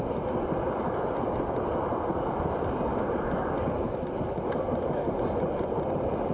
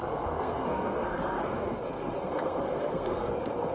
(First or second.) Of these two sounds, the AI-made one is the second